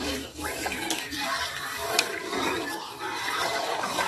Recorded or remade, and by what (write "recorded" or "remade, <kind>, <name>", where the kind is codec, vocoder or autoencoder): remade, codec, DAC